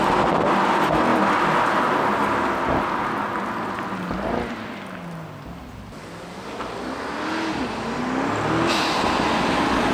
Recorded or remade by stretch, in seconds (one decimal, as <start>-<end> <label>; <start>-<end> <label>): 0.0-9.9 recorded